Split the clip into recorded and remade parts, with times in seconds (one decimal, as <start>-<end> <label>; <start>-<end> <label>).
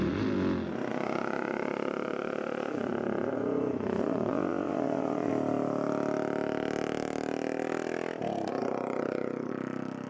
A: 0.0-0.9 recorded; 0.9-5.3 remade; 5.3-8.6 recorded; 8.6-9.5 remade; 9.5-10.1 recorded